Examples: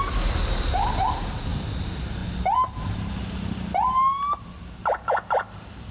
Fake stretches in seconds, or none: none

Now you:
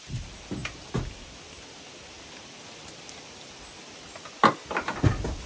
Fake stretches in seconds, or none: none

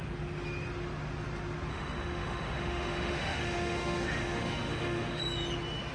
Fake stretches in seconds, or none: 1.7-5.2 (autoencoder, DAC-VAE)

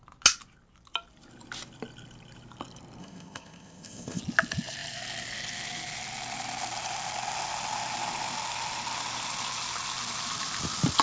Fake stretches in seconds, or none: 3.0-4.2 (codec, ZipCodec)

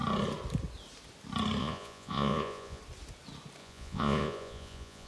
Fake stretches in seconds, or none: 1.6-2.8 (vocoder, Vocos); 3.6-5.1

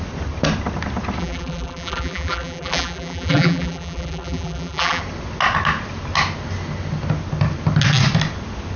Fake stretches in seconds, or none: 1.2-5.0 (vocoder, BigVGAN v2)

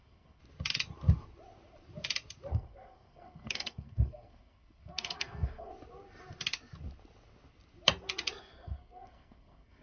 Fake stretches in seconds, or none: 0.0-0.4 (codec, SNAC); 2.5-5.7; 8.4-9.8